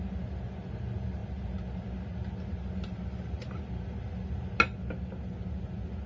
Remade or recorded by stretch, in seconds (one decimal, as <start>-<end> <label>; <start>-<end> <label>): 0.0-6.1 recorded